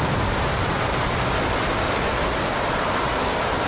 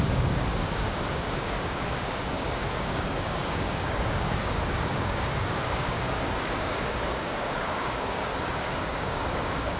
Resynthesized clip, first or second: second